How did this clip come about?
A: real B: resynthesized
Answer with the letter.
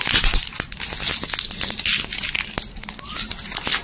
A